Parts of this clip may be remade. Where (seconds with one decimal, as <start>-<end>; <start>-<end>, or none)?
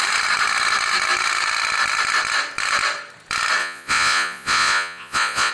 3.6-5.5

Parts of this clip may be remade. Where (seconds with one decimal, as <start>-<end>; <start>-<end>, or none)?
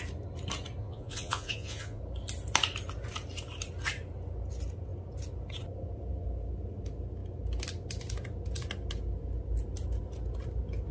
0.8-2.0